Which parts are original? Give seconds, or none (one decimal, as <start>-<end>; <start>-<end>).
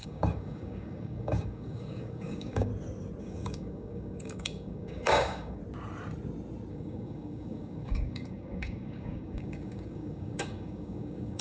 2.7-3.2; 5.6-6.7